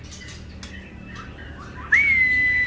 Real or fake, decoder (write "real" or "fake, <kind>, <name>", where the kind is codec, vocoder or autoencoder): real